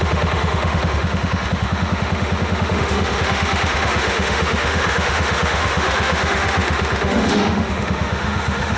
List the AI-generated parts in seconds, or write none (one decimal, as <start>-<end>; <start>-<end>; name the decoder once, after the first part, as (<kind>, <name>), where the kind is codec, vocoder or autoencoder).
0.0-8.8 (autoencoder, DAC-VAE)